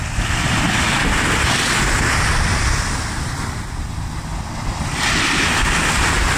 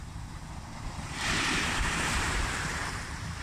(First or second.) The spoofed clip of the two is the second